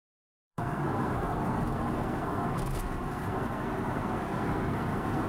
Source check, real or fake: fake